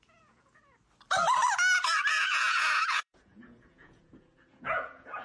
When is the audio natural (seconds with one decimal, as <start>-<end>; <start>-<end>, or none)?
0.6-2.1